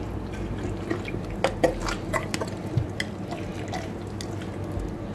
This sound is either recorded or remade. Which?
recorded